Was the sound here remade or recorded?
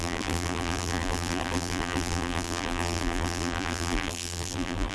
remade